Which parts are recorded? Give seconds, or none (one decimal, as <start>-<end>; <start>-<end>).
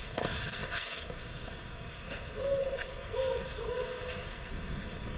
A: none